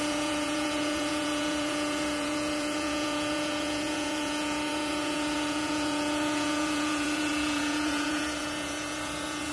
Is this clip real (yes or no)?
no